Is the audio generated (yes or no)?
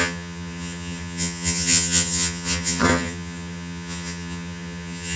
yes